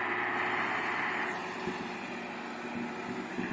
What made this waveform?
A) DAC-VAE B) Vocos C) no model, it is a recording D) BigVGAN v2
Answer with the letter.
C